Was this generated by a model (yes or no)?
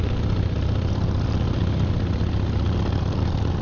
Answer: no